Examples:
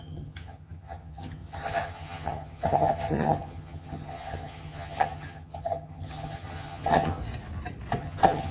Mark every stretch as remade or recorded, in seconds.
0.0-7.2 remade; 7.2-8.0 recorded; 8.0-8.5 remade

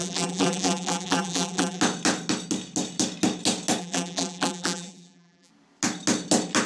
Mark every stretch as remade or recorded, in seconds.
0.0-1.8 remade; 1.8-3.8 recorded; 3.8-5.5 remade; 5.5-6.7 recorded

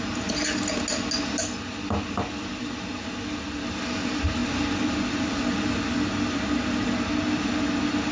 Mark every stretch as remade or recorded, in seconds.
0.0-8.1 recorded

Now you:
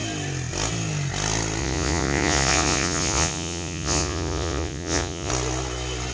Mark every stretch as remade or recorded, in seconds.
0.0-1.6 recorded; 1.6-5.3 remade; 5.3-6.1 recorded

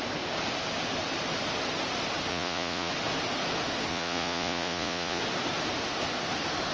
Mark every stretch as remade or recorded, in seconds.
0.0-2.3 recorded; 2.3-2.9 remade; 2.9-3.9 recorded; 3.9-5.2 remade; 5.2-6.7 recorded

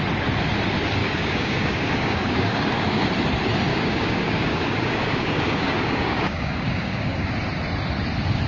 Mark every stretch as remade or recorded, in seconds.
0.0-1.0 recorded; 1.0-3.1 remade; 3.1-3.7 recorded; 3.7-7.3 remade; 7.3-8.5 recorded